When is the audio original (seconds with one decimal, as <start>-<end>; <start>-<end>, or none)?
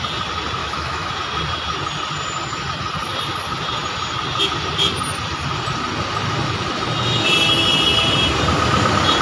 0.0-0.6; 1.1-9.2